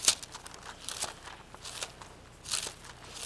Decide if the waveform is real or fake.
real